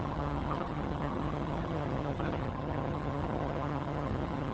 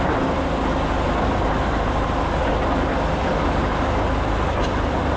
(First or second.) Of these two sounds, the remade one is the first